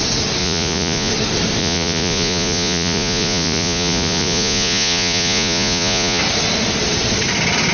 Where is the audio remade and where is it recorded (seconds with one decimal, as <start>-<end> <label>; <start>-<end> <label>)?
0.0-0.4 recorded; 0.4-1.1 remade; 1.1-1.6 recorded; 1.6-6.2 remade; 6.2-7.7 recorded